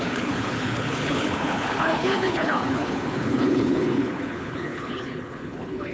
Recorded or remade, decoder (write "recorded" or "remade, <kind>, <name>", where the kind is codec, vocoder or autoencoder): remade, codec, HILCodec